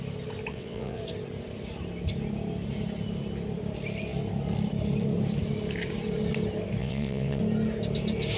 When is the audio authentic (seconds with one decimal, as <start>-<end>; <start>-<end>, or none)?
0.0-0.5; 1.0-6.8; 7.4-8.4